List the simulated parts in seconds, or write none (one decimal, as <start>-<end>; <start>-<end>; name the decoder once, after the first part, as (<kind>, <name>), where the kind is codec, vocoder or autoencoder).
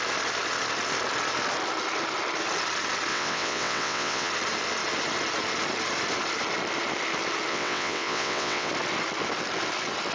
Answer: 3.1-4.3 (vocoder, WaveNeXt); 7.5-8.7